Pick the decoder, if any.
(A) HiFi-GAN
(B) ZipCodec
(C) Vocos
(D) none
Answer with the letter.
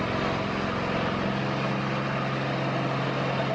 D